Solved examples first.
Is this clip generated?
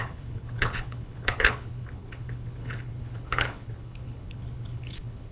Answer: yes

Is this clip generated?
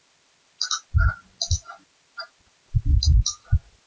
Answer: no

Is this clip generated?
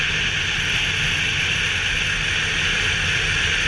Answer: no